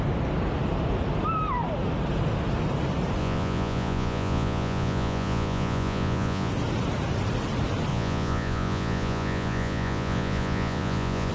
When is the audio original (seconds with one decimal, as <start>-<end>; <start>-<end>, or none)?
0.0-3.2; 6.5-7.9